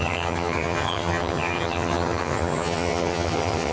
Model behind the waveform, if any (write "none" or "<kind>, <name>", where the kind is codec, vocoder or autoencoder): vocoder, HiFi-GAN